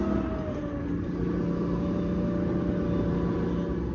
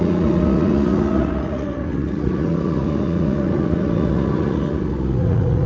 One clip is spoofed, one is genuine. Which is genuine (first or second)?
first